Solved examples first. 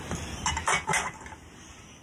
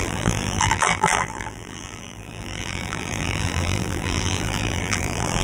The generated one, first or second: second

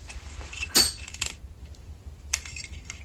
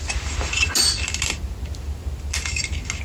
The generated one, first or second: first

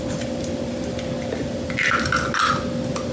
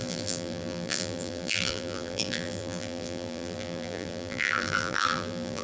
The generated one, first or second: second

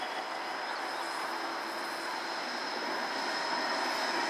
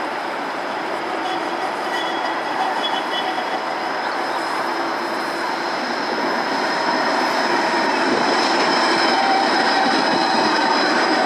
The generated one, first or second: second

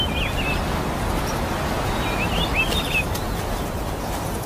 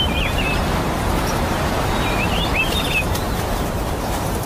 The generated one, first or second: second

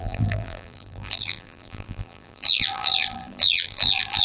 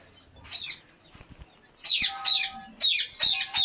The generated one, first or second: first